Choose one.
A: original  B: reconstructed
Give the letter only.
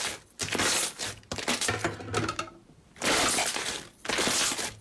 A